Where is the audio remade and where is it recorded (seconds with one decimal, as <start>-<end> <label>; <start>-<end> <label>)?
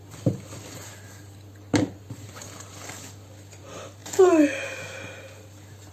0.0-5.9 recorded